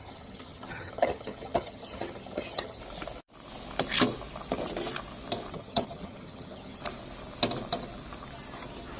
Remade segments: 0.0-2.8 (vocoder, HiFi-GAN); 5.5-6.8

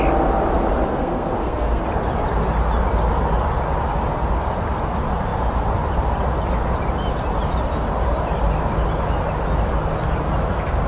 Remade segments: 0.9-1.8 (codec, SNAC)

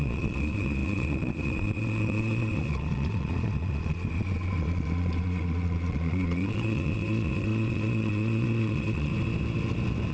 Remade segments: 0.0-9.1 (vocoder, Vocos)

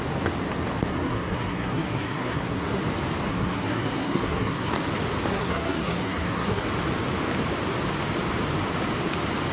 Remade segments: 0.9-2.8 (codec, SNAC); 3.3-4.7; 5.3-6.6

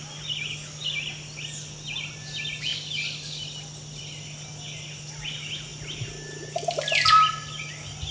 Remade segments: none

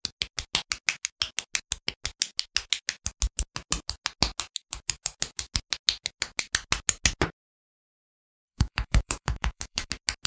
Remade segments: 8.4-9.9 (autoencoder, DAC-VAE)

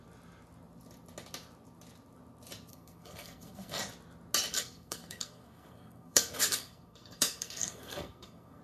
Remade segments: 2.7-3.8 (codec, SNAC); 4.5-8.6

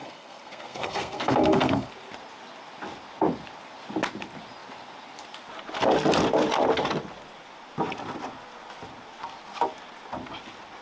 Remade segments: 0.0-1.9 (codec, SNAC)